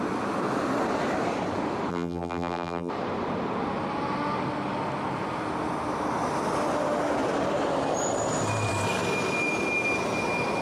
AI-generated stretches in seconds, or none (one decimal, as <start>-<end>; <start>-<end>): 1.9-2.9